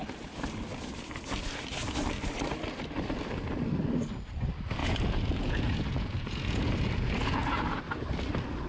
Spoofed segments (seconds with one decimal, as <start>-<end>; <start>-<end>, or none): 4.8-7.8